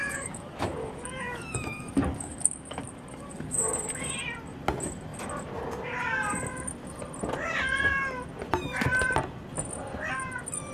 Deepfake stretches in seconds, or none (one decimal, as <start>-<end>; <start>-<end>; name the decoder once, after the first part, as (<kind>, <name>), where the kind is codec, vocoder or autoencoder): 0.0-3.5 (codec, DAC)